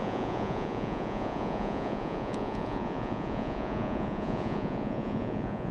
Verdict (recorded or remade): remade